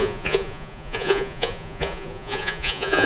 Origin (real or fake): fake